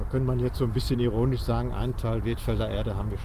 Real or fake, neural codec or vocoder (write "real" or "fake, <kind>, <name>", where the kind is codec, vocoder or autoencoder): real